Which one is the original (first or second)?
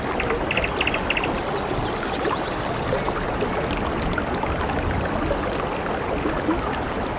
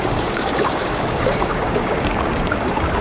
first